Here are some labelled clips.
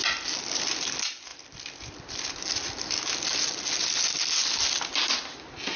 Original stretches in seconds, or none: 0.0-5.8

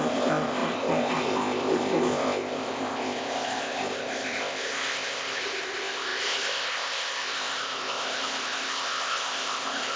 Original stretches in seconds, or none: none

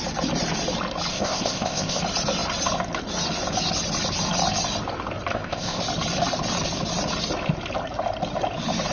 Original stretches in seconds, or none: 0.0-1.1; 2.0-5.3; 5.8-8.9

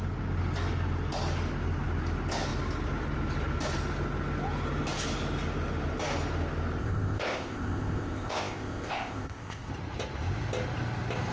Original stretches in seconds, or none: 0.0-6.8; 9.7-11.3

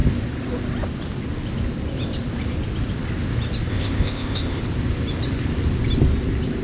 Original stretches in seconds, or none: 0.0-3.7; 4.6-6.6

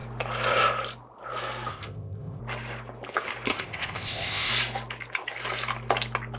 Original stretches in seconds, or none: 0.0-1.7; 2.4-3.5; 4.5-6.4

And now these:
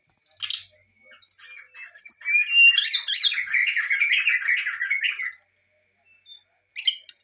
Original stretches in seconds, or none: 0.0-7.2